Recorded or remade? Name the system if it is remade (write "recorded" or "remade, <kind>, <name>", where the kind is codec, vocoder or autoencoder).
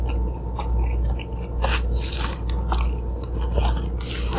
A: recorded